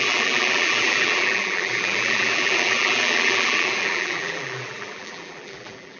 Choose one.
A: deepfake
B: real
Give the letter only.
A